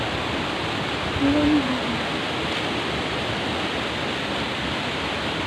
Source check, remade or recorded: recorded